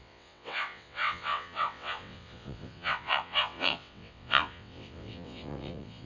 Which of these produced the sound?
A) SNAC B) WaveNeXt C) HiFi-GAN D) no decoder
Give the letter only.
B